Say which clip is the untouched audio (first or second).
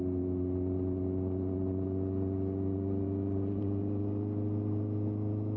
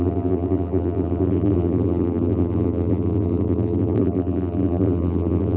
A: first